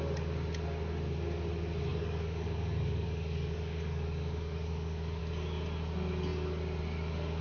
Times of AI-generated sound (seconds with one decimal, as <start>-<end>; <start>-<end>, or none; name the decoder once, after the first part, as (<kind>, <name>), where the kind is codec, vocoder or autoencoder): 1.9-5.2 (codec, DAC)